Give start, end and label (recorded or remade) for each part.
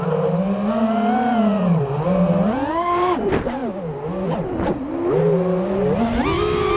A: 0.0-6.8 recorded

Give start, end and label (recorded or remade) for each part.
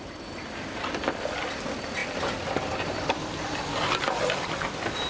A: 0.0-2.0 recorded; 2.0-4.0 remade; 4.0-5.1 recorded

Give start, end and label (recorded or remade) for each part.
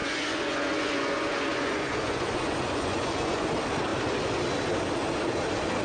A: 0.0-3.5 remade; 3.5-5.8 recorded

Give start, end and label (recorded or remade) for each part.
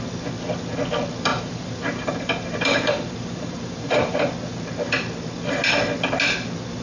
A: 0.0-1.3 recorded; 1.3-4.3 remade; 4.3-6.8 recorded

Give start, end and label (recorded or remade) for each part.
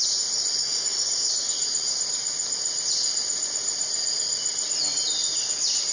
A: 0.0-0.6 recorded; 0.6-1.3 remade; 1.3-5.9 recorded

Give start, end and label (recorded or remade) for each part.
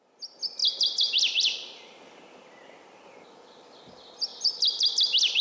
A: 0.0-0.6 recorded; 0.6-3.8 remade; 3.8-4.3 recorded; 4.3-5.4 remade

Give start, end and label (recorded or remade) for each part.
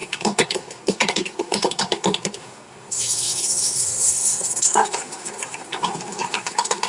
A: 0.0-6.9 remade